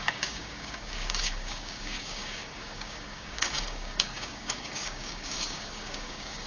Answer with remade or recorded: remade